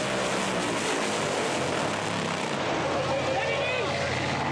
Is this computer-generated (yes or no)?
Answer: no